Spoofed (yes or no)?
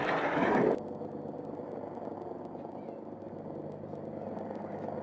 no